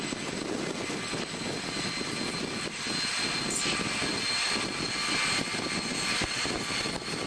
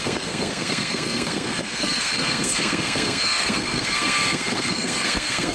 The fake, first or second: second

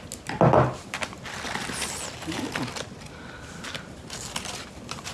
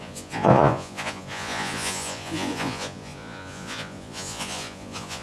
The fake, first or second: second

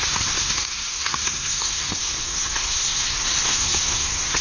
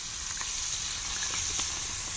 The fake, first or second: first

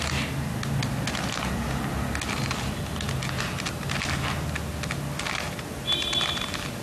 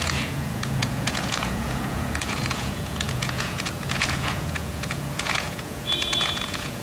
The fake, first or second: second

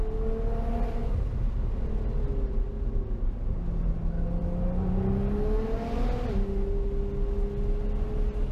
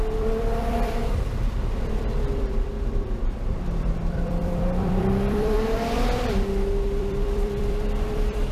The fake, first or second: second